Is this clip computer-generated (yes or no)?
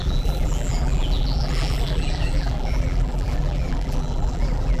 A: yes